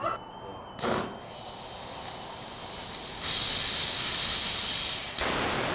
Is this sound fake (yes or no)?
no